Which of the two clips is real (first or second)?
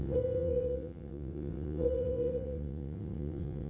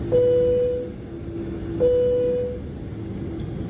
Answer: second